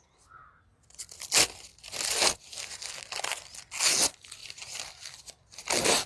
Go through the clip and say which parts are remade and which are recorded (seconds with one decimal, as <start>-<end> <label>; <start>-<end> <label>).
0.0-4.4 recorded; 4.4-5.2 remade; 5.2-6.1 recorded